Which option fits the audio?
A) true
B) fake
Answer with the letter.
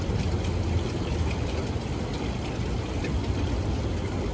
A